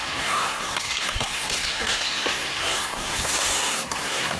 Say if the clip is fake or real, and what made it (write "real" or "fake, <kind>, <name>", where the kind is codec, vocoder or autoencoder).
fake, codec, SNAC